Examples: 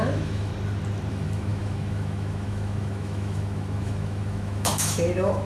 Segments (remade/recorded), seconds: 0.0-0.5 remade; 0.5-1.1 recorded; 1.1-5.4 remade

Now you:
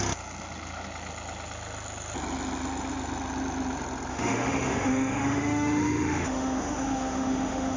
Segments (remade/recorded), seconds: 0.0-4.1 recorded; 4.1-7.8 remade

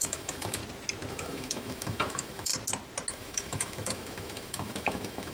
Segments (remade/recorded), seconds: 0.0-0.6 remade; 0.6-1.1 recorded; 1.1-2.5 remade; 2.5-3.1 recorded; 3.1-5.3 remade

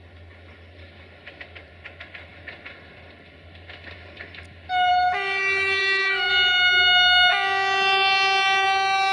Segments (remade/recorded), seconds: 0.0-5.8 recorded; 5.8-6.3 remade; 6.3-9.1 recorded